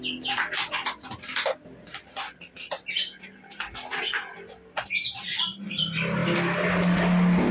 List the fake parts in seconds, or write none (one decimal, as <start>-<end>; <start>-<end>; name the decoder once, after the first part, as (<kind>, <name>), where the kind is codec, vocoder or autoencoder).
none